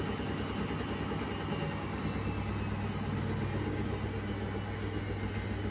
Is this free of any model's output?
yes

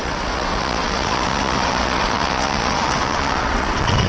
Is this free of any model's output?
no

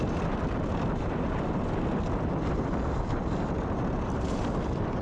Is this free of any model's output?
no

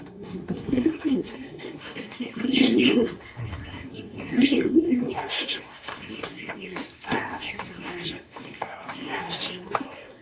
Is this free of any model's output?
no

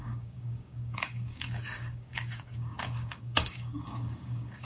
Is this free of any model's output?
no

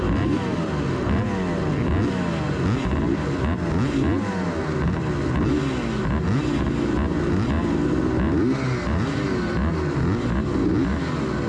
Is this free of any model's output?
yes